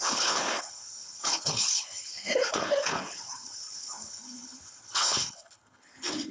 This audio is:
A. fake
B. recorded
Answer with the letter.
A